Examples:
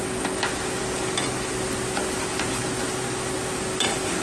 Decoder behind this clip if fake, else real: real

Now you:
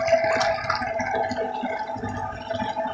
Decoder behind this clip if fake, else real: real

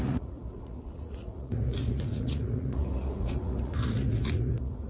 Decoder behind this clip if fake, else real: fake, vocoder, Vocos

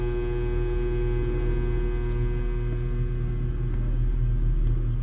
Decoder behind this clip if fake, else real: real